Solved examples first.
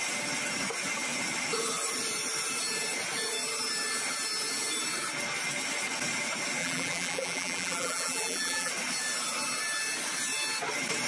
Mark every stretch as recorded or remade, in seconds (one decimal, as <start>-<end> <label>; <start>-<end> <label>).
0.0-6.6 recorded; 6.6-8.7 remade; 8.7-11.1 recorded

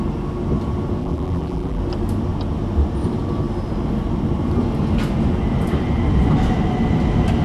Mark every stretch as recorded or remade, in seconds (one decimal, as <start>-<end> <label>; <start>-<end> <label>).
0.0-1.0 recorded; 1.0-1.8 remade; 1.8-7.4 recorded

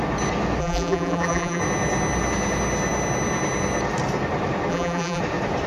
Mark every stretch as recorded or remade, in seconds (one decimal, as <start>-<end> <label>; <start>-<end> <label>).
0.0-0.6 recorded; 0.6-1.6 remade; 1.6-4.7 recorded; 4.7-5.2 remade; 5.2-5.7 recorded

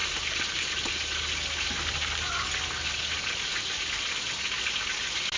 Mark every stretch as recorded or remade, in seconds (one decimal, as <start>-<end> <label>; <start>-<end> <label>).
0.0-5.4 recorded